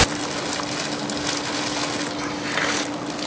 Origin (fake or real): real